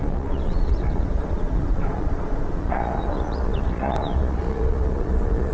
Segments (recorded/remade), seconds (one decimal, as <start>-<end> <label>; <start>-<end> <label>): 0.0-5.5 remade